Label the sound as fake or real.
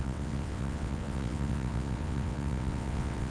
fake